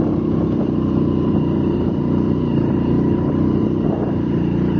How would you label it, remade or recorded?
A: remade